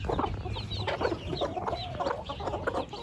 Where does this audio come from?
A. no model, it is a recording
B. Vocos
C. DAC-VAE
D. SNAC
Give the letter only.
A